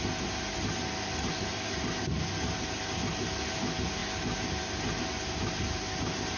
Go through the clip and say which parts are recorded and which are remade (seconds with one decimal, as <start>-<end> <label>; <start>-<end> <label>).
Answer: 0.0-6.4 recorded